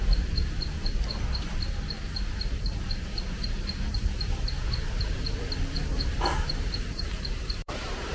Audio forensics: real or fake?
fake